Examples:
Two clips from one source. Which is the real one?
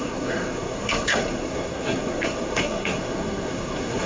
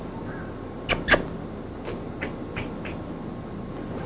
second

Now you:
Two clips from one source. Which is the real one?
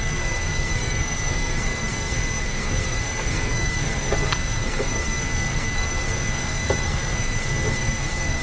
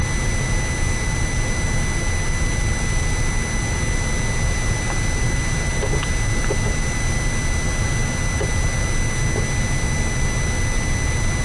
second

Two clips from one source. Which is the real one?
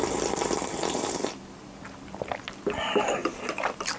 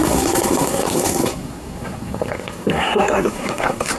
first